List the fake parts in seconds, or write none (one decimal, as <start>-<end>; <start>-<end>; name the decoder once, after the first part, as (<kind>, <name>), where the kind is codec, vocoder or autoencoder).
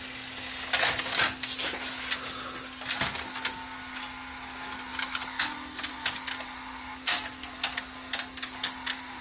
none